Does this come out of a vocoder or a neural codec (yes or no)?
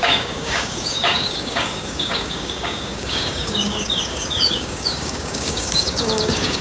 yes